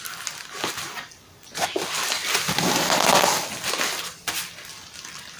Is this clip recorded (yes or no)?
yes